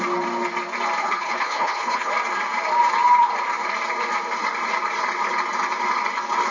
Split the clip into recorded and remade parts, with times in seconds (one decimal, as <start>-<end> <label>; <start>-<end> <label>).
0.0-1.0 recorded; 1.0-2.1 remade; 2.1-6.5 recorded